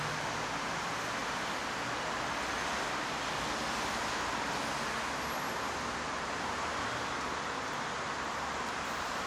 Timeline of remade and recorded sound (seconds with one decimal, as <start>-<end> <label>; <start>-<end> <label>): 0.0-9.3 recorded